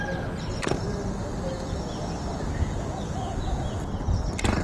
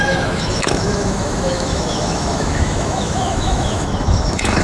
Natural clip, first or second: first